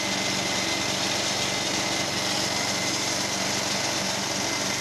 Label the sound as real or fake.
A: real